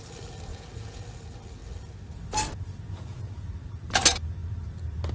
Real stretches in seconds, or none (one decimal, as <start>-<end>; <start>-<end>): 0.0-0.5; 1.0-5.1